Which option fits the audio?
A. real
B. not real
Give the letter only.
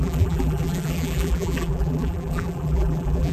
B